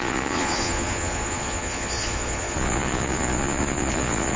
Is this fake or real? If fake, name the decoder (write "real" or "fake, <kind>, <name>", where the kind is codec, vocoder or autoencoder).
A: fake, vocoder, Vocos